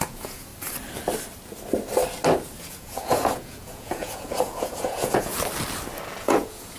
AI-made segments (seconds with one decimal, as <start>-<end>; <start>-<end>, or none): 0.0-0.5; 2.6-5.3; 6.2-6.8

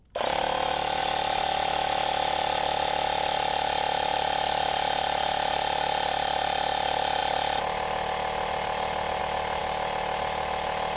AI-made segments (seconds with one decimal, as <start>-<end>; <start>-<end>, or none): none